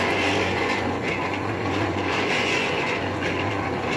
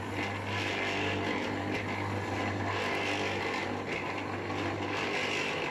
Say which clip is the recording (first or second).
second